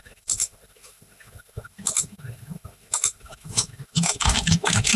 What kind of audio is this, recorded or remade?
remade